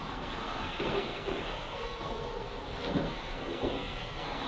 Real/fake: fake